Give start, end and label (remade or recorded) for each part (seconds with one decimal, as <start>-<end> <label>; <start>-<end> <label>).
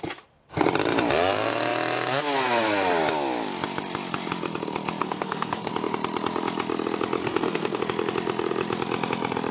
0.0-5.0 recorded; 5.0-5.7 remade; 5.7-7.2 recorded; 7.2-7.8 remade; 7.8-9.5 recorded